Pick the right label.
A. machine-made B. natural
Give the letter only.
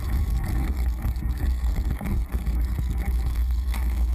A